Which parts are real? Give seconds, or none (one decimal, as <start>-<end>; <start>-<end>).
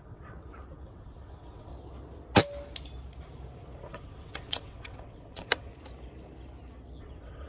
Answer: 1.7-3.8; 5.7-7.0